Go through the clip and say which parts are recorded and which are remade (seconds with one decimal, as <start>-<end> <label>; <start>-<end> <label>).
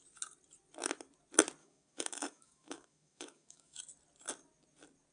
0.0-1.6 recorded; 1.6-3.8 remade; 3.8-5.1 recorded